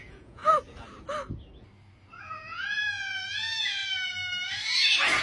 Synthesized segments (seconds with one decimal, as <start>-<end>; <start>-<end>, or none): 0.0-0.4; 2.2-3.8